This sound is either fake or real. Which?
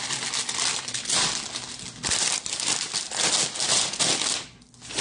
real